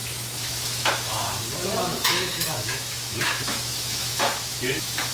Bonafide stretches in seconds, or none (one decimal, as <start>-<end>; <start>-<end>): 1.4-1.8